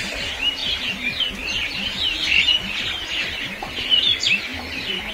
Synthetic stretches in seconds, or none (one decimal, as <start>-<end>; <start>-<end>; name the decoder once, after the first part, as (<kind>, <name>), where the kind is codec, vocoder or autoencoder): 4.5-5.1 (vocoder, BigVGAN v2)